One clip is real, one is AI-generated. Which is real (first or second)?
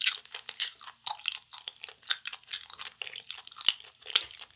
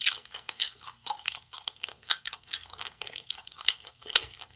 first